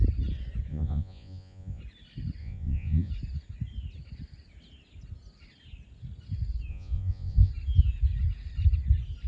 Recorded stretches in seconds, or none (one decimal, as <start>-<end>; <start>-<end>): 0.0-0.7; 1.8-2.4; 3.1-6.7; 7.5-9.3